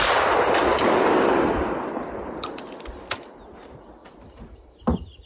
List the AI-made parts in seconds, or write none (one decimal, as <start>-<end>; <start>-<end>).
4.0-5.3